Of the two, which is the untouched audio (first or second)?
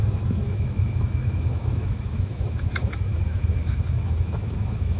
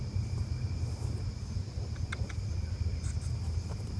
second